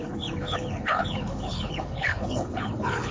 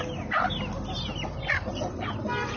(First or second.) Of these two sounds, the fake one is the first